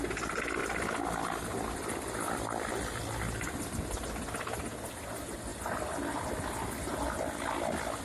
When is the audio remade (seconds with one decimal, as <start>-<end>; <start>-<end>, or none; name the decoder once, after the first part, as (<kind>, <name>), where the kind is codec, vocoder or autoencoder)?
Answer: 0.6-3.0 (vocoder, BigVGAN v2); 5.5-6.3